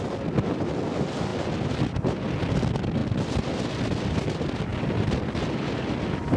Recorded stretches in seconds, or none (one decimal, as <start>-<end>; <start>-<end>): 0.0-6.4